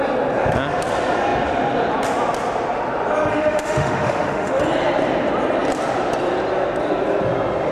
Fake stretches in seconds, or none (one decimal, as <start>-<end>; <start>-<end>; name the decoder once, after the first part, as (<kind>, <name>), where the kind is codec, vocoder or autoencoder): 3.3-4.6 (autoencoder, DAC-VAE)